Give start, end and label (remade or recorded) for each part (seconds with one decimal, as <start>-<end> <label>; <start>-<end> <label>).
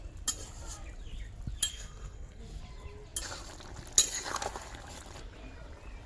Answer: 0.0-1.7 recorded; 1.7-2.4 remade; 2.4-6.1 recorded